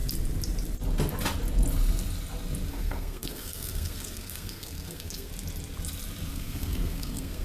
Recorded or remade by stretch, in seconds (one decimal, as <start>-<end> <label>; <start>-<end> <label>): 0.0-2.7 recorded; 2.7-5.3 remade; 5.3-6.3 recorded; 6.3-7.4 remade